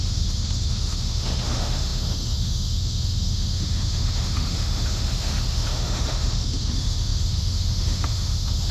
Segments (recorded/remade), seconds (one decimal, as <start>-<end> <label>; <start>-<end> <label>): 0.0-8.7 remade